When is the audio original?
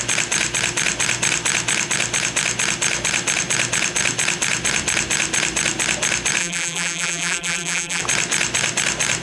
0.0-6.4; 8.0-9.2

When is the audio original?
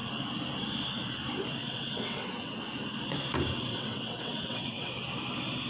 0.0-1.6; 2.6-3.7; 4.9-5.7